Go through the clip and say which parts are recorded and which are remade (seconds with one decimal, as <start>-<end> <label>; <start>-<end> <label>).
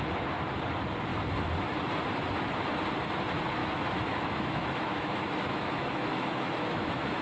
0.0-3.6 recorded; 3.6-7.2 remade